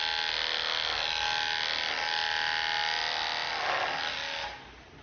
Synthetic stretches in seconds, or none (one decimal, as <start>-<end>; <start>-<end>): none